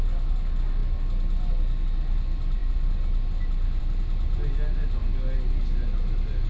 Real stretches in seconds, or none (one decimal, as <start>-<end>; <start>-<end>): 0.0-6.5